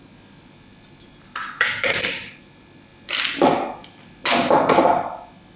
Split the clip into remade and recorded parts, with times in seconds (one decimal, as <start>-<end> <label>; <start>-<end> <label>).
0.0-5.6 recorded